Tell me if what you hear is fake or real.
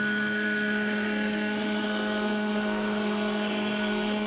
fake